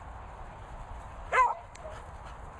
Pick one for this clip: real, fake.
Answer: real